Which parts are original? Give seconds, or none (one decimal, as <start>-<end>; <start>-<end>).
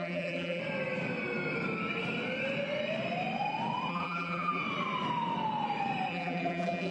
0.6-3.9; 4.6-6.1